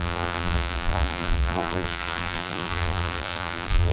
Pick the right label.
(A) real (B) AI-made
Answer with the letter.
B